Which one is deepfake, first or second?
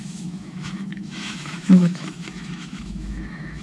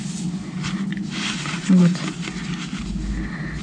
first